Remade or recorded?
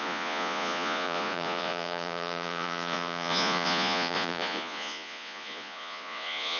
remade